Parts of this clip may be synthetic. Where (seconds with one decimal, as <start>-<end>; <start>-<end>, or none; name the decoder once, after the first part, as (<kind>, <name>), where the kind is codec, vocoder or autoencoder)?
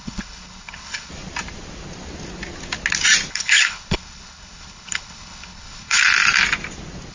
0.0-1.1 (codec, HILCodec); 3.3-6.0